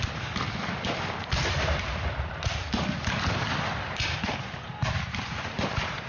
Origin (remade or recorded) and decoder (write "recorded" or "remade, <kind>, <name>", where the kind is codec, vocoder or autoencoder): remade, vocoder, BigVGAN v2